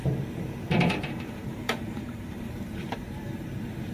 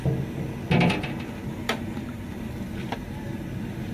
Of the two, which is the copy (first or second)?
first